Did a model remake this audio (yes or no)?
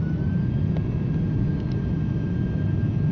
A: no